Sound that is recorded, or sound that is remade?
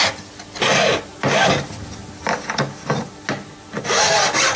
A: recorded